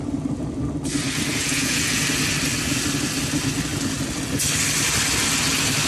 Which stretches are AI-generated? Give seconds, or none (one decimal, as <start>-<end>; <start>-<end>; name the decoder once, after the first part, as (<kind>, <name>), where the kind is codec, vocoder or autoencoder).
1.3-2.0 (vocoder, Vocos)